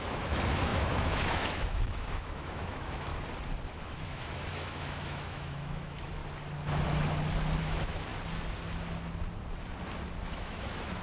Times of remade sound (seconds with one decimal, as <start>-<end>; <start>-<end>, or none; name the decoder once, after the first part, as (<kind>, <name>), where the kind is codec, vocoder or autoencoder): 0.0-3.1 (autoencoder, DAC-VAE); 3.8-6.2; 7.6-8.1; 10.3-11.0